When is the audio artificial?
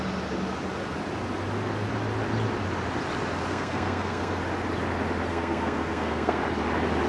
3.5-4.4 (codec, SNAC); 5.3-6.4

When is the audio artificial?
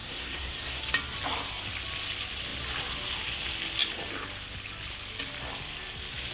0.0-0.8 (codec, SNAC)